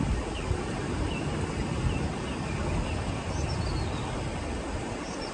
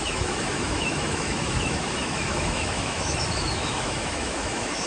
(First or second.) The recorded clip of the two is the first